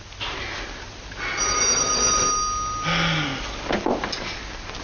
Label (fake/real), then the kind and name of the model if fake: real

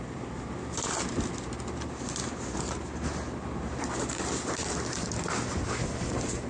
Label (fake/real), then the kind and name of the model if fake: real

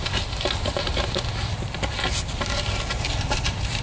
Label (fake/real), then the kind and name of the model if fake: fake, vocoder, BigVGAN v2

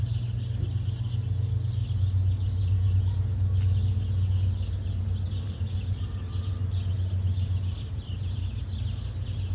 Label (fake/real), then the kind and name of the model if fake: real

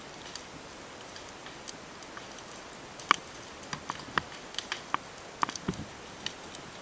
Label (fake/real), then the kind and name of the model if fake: real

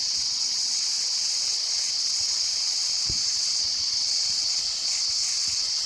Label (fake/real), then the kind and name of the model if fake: fake, vocoder, WaveNeXt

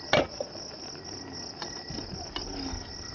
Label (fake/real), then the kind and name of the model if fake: real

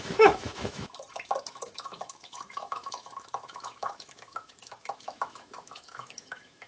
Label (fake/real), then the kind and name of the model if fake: fake, autoencoder, DAC-VAE